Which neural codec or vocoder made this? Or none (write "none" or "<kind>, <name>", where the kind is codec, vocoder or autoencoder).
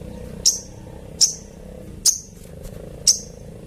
none